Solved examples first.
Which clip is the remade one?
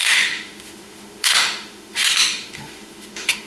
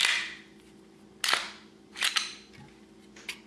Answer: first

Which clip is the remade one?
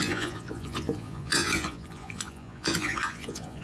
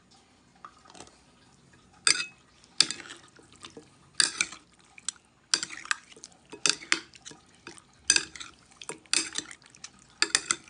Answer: first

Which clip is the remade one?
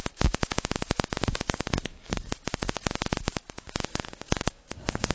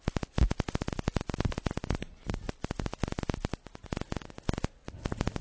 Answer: first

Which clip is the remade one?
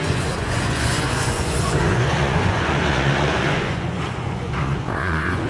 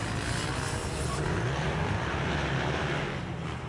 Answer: first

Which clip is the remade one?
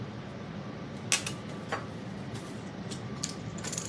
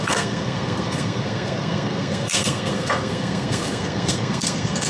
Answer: second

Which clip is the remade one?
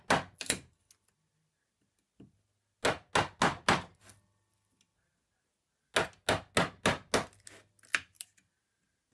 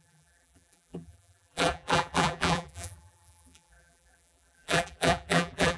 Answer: second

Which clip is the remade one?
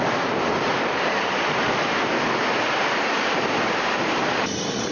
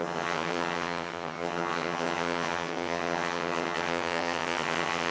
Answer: second